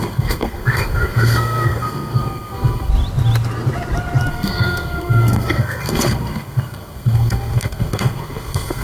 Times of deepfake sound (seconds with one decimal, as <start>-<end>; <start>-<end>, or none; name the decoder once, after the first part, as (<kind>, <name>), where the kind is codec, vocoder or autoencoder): 0.0-2.9 (codec, SNAC); 4.3-8.8